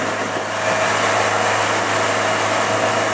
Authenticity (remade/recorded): recorded